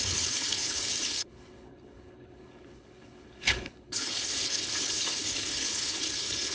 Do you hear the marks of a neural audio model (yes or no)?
yes